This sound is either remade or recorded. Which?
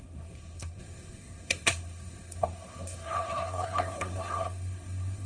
remade